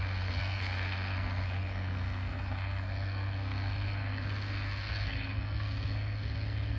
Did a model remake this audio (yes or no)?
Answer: yes